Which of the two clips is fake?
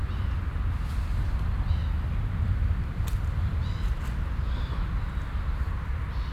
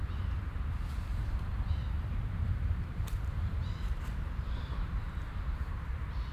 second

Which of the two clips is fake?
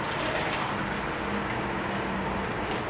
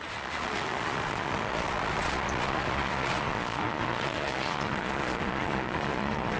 second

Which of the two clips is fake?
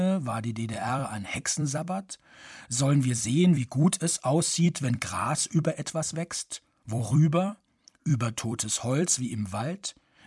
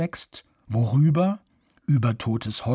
first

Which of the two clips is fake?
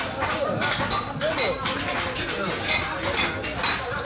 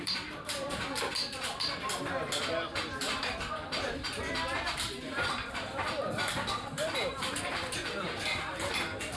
second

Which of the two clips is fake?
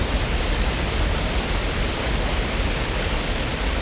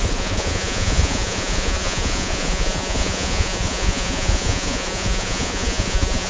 second